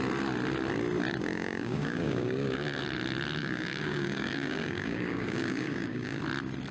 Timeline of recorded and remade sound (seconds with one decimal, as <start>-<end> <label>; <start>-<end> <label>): 0.0-1.3 recorded; 1.3-2.8 remade; 2.8-3.4 recorded; 3.4-6.2 remade; 6.2-6.7 recorded